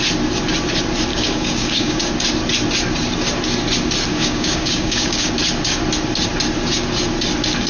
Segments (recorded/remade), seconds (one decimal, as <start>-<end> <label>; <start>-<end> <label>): 0.0-1.1 recorded; 1.1-2.1 remade; 2.1-4.1 recorded; 4.1-5.3 remade; 5.3-7.7 recorded